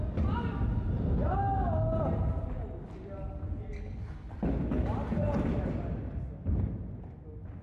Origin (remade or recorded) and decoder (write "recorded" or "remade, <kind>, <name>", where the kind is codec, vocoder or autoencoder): recorded